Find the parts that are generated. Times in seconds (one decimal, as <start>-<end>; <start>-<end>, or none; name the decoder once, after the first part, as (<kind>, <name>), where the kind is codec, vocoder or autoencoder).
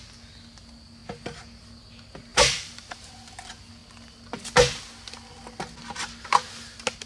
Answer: 2.3-3.1 (vocoder, BigVGAN v2)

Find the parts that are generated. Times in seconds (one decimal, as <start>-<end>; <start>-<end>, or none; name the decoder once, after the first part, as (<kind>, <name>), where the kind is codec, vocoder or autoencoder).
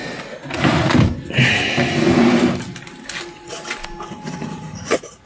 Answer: 4.4-5.3 (vocoder, Vocos)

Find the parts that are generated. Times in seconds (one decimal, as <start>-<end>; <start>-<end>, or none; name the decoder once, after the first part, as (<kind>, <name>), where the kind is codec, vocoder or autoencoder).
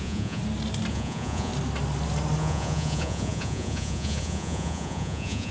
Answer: 0.0-0.4 (vocoder, Vocos); 0.9-1.5; 2.4-5.5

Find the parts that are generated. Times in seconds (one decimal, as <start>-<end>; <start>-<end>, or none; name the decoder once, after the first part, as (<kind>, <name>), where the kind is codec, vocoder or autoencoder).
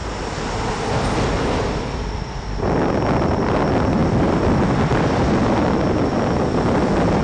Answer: none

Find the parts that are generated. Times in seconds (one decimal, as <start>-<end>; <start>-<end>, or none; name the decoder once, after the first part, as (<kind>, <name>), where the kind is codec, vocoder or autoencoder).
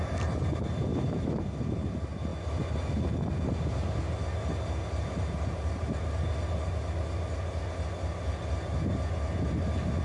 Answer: 0.9-1.4 (autoencoder, DAC-VAE)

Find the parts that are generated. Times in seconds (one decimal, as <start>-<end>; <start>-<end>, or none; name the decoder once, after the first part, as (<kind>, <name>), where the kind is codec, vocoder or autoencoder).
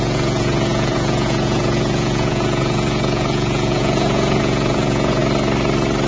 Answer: 0.0-5.2 (vocoder, Vocos)